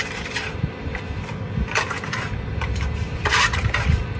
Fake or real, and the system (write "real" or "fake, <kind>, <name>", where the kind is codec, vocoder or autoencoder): fake, vocoder, BigVGAN v2